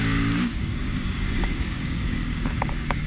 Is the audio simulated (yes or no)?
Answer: yes